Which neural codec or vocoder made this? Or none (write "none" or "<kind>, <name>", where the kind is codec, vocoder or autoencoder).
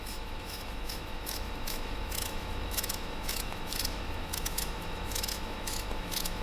autoencoder, DAC-VAE